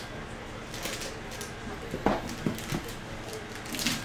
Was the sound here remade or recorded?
recorded